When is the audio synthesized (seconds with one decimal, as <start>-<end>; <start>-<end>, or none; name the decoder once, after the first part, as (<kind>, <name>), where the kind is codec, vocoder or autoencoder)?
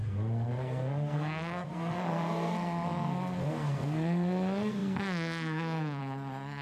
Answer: 0.0-6.6 (codec, SNAC)